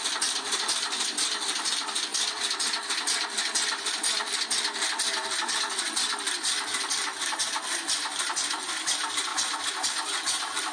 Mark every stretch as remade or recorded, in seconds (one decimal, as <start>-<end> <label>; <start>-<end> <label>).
0.0-9.3 remade; 9.3-10.2 recorded; 10.2-10.7 remade